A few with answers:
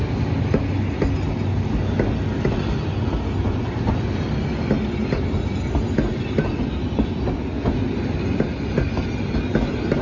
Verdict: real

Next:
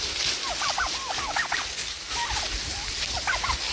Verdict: real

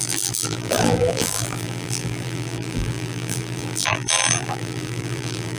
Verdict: fake